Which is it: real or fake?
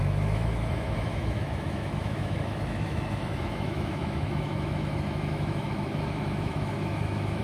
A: fake